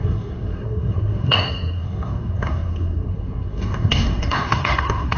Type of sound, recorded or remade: remade